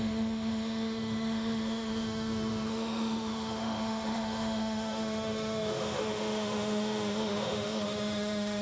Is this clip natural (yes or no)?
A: no